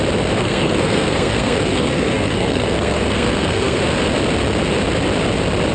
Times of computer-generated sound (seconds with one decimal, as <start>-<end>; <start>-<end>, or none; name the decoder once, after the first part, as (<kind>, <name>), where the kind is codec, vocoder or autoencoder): 0.4-3.8 (codec, SNAC)